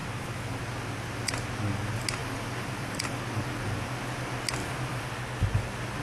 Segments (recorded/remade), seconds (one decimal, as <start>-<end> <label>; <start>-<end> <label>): 0.0-0.6 remade; 0.6-2.2 recorded; 2.2-3.2 remade; 3.2-4.6 recorded; 4.6-5.1 remade; 5.1-6.0 recorded